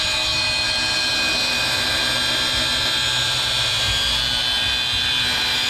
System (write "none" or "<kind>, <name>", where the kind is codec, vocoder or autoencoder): none